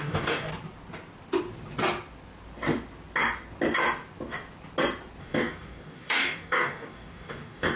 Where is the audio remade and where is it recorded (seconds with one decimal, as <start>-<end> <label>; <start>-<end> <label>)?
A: 0.0-0.5 remade; 0.5-5.2 recorded; 5.2-7.8 remade